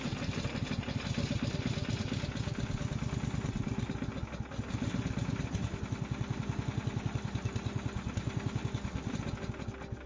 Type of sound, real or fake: real